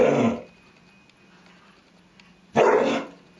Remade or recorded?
recorded